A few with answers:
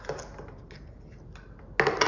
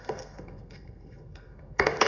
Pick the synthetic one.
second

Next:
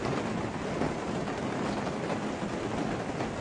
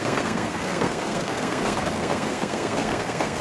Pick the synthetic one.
second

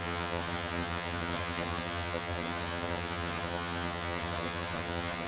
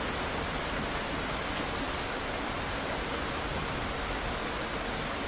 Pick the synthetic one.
first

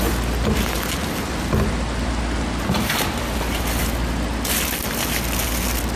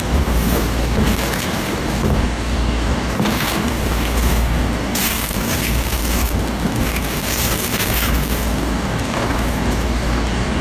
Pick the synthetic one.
second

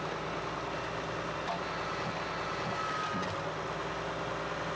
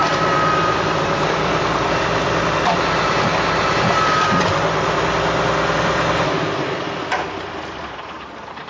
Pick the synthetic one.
second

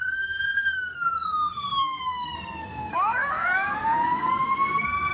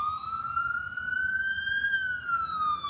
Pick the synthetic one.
first